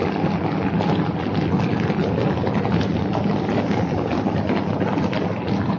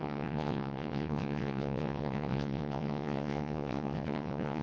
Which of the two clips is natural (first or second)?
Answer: first